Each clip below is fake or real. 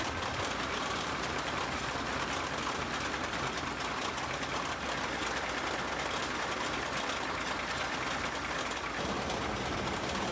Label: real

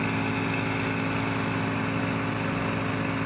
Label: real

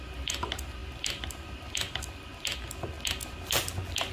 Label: real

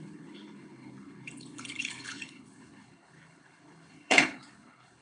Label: fake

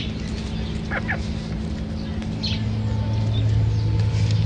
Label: real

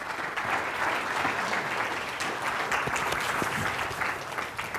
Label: real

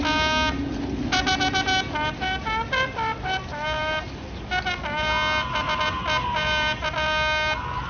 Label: real